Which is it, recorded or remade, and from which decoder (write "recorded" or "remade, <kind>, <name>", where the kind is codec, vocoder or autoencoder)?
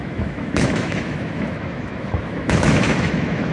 remade, autoencoder, DAC-VAE